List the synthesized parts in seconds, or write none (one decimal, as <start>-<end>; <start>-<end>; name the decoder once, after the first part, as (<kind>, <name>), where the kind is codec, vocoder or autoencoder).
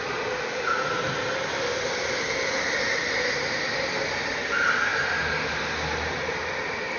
none